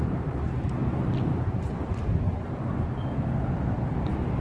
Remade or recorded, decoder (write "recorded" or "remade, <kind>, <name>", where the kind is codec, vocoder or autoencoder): recorded